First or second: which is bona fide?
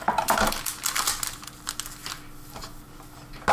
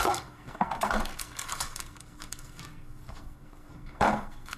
first